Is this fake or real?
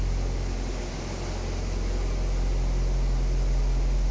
real